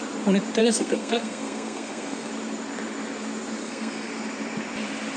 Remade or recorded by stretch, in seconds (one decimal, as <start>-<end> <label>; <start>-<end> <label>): 0.0-0.6 recorded; 0.6-2.3 remade; 2.3-3.6 recorded; 3.6-4.1 remade; 4.1-5.2 recorded